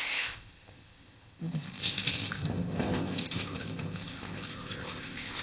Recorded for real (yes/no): no